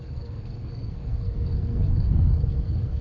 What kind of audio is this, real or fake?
fake